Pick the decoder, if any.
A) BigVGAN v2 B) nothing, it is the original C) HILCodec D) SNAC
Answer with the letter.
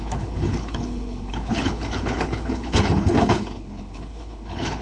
C